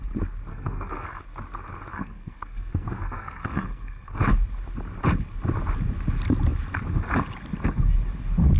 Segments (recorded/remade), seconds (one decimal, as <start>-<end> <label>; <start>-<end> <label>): 0.0-0.5 recorded; 0.5-1.2 remade; 1.2-1.9 recorded; 1.9-4.2 remade; 4.2-8.6 recorded